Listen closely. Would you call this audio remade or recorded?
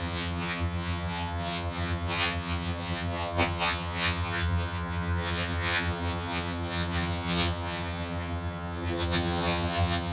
remade